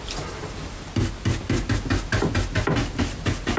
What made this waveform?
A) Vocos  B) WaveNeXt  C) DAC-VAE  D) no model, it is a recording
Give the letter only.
D